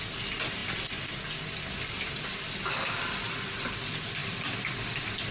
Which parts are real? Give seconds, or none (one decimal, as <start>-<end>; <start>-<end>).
0.0-4.2; 4.7-5.3